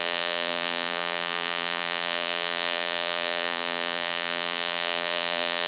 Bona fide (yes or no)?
no